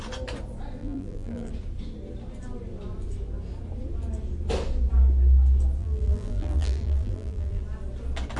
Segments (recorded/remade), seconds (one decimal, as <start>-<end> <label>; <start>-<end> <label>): 0.0-0.8 recorded; 0.8-1.5 remade; 1.5-5.8 recorded; 5.8-7.6 remade; 7.6-8.4 recorded

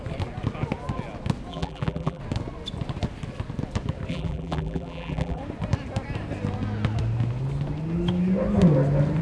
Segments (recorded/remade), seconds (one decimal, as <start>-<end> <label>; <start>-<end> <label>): 0.0-1.5 recorded; 1.5-2.2 remade; 2.2-4.1 recorded; 4.1-5.4 remade; 5.4-9.2 recorded

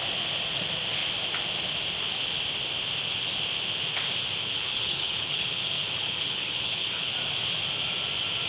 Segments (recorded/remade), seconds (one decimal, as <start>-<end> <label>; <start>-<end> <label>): 0.0-4.4 recorded; 4.4-7.1 remade; 7.1-8.5 recorded

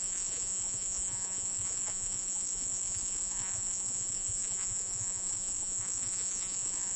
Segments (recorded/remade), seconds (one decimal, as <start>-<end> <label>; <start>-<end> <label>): 0.0-7.0 remade

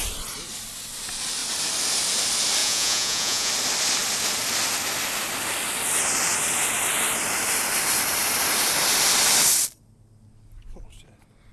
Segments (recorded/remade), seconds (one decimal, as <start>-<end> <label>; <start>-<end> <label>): 0.0-2.6 recorded; 2.6-3.5 remade; 3.5-11.5 recorded

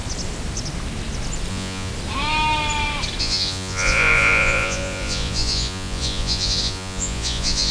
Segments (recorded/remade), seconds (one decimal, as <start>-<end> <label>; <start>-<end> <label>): 0.0-1.5 recorded; 1.5-1.9 remade; 1.9-3.2 recorded; 3.2-7.7 remade

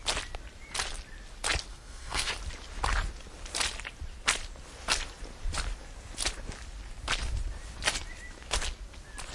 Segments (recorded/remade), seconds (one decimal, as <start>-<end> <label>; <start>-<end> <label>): 0.0-1.7 recorded; 1.7-2.3 remade; 2.3-9.3 recorded